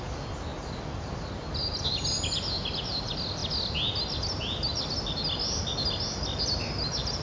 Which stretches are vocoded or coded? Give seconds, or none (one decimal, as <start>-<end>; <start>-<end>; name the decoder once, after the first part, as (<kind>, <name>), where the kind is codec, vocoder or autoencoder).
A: none